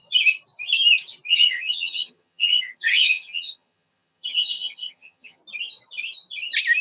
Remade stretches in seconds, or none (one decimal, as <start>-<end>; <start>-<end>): 1.3-5.4